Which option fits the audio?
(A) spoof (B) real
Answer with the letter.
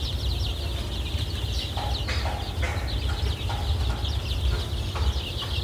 B